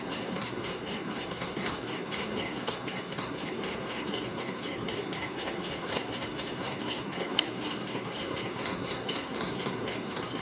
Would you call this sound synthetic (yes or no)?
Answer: yes